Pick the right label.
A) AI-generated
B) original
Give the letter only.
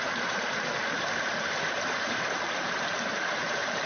A